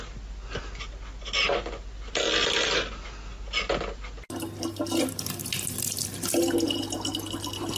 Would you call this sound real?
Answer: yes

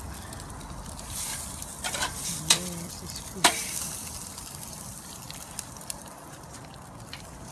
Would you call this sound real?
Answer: no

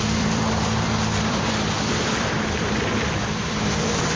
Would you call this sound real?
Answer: no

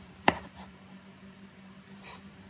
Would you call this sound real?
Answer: no